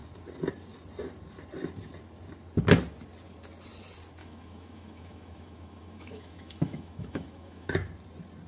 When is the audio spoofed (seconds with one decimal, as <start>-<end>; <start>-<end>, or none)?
4.2-7.7